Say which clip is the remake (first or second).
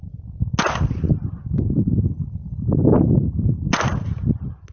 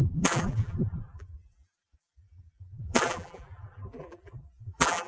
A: second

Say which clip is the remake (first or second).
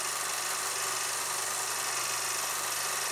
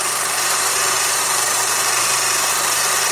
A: second